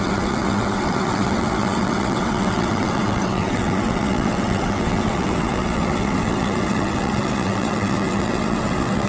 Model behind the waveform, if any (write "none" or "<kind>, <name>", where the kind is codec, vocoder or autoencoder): vocoder, WaveNeXt